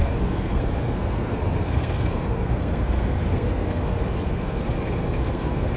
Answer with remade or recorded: remade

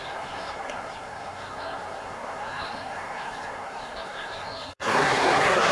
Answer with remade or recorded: remade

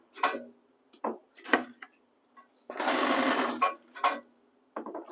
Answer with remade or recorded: recorded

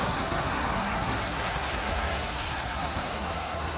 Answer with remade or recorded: remade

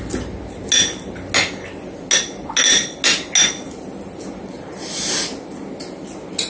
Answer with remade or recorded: recorded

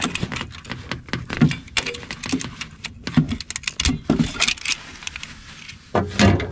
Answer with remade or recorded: recorded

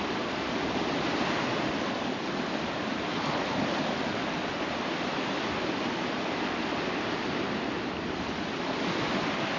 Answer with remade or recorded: recorded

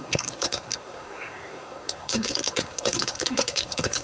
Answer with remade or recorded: remade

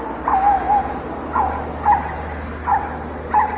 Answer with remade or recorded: recorded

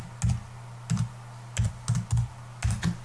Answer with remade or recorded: recorded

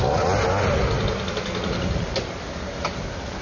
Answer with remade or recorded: recorded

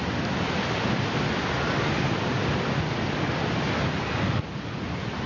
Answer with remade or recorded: recorded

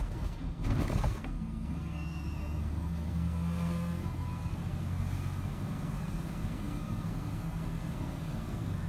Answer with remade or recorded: remade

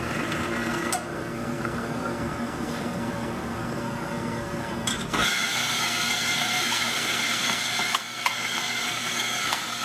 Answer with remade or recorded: remade